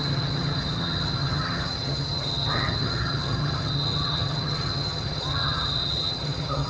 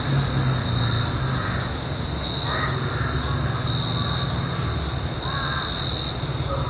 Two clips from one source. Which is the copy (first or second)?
first